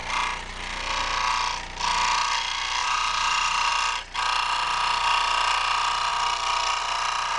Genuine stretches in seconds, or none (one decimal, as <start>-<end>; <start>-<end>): 0.0-2.8; 3.7-7.4